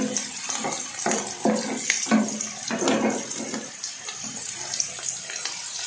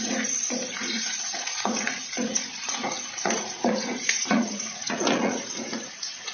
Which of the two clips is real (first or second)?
first